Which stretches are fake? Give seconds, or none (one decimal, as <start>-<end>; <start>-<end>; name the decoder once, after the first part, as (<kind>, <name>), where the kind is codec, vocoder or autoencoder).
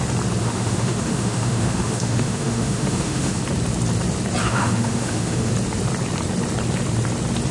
0.4-3.4 (autoencoder, DAC-VAE); 4.4-5.5